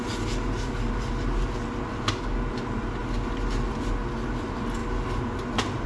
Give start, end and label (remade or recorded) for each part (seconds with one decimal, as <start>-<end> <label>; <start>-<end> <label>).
0.0-5.9 recorded